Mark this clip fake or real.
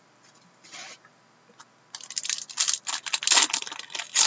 real